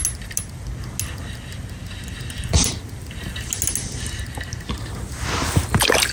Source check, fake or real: real